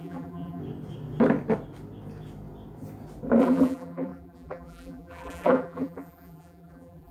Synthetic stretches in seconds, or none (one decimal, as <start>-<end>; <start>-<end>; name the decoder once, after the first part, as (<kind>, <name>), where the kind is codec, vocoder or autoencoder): 0.0-0.6 (vocoder, BigVGAN v2); 3.4-7.1